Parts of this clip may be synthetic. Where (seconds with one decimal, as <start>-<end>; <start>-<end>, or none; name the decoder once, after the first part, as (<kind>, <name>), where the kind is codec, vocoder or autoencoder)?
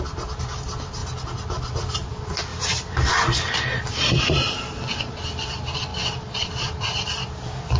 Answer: none